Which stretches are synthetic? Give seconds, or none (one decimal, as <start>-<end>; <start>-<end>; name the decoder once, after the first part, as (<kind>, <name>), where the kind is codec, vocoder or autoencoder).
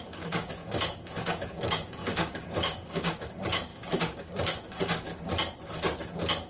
0.0-5.1 (codec, DAC)